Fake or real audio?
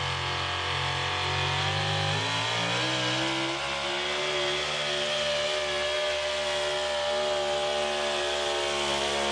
real